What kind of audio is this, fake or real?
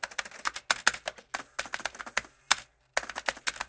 real